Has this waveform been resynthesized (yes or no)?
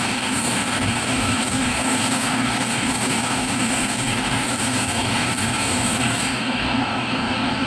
yes